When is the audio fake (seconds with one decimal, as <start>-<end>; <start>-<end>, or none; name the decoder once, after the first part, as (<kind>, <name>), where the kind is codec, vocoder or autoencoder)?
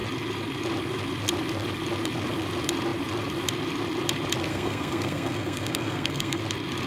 4.5-6.4 (codec, SNAC)